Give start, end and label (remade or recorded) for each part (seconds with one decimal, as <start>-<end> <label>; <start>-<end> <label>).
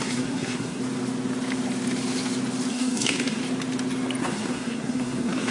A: 0.0-0.8 remade; 0.8-2.7 recorded; 2.7-3.4 remade; 3.4-4.2 recorded; 4.2-5.5 remade